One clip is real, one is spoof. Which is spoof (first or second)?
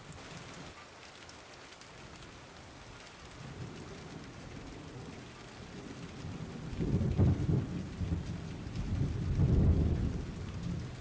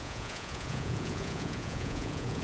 second